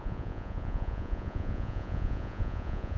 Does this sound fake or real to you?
fake